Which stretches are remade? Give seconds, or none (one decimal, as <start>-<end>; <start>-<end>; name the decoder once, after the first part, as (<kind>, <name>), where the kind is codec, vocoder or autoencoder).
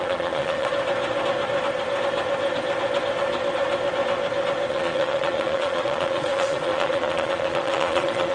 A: 0.0-0.7 (vocoder, Vocos); 4.7-8.3